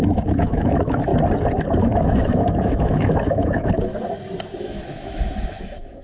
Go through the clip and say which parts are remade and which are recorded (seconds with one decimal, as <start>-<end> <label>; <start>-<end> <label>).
0.0-1.1 remade; 1.1-1.8 recorded; 1.8-3.9 remade; 3.9-4.6 recorded; 4.6-6.0 remade